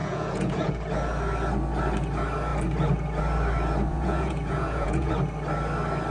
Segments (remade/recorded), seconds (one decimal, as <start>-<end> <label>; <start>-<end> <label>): 0.0-0.7 remade; 0.7-3.9 recorded; 3.9-5.1 remade; 5.1-6.1 recorded